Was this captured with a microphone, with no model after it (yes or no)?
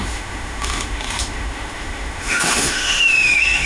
no